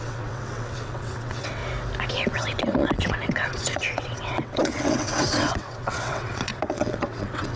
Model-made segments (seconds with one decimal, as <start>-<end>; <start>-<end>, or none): 0.0-1.6; 2.1-7.6

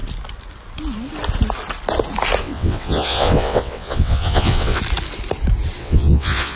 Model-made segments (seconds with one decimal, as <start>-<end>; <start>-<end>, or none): 2.4-4.8; 5.8-6.6

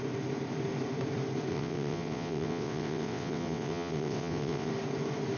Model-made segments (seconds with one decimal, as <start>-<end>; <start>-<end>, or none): 1.5-4.7

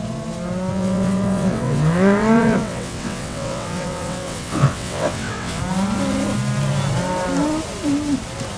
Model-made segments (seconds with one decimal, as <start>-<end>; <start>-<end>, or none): 0.7-5.6

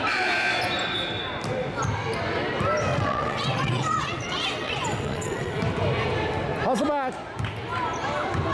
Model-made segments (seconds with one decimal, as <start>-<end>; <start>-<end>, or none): 2.9-5.6

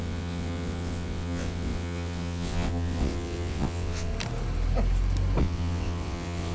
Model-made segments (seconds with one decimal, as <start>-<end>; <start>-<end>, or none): 0.0-4.1; 5.4-6.5